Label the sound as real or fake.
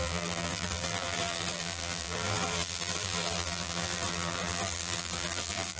fake